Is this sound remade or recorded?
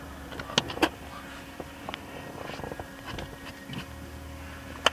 recorded